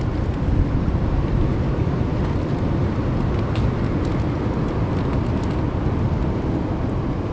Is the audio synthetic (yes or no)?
no